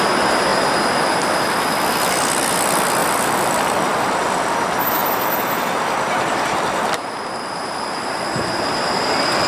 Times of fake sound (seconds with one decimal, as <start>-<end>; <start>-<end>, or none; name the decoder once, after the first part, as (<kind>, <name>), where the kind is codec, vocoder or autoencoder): 3.0-4.1 (vocoder, BigVGAN v2); 5.0-7.2